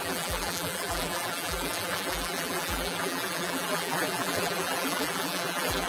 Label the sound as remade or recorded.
remade